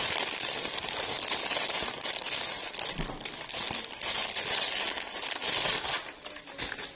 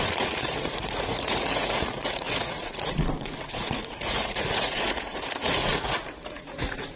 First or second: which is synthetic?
second